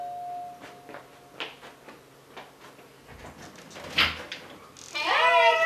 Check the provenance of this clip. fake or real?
real